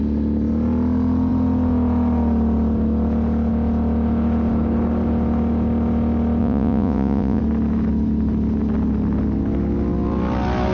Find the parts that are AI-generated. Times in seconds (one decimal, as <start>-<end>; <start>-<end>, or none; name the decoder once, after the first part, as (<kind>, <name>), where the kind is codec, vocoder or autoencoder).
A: 6.4-7.4 (vocoder, Vocos)